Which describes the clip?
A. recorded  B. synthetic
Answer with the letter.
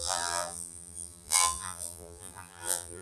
B